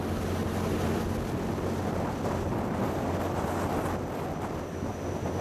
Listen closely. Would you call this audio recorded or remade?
recorded